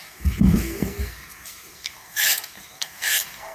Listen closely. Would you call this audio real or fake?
fake